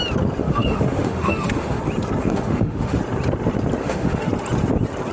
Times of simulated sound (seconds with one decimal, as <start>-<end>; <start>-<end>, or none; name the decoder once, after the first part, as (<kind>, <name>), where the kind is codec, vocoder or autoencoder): 0.4-1.8 (autoencoder, DAC-VAE); 2.2-3.0; 3.8-4.3